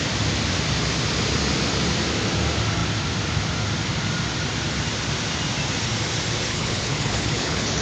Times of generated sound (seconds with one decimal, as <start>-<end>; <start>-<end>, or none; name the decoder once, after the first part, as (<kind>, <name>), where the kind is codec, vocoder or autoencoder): 6.5-7.8 (codec, HILCodec)